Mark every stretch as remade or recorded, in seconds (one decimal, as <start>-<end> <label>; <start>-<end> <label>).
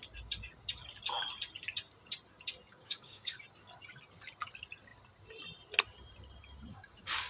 0.0-2.7 recorded; 2.7-3.4 remade; 3.4-6.7 recorded; 6.7-7.3 remade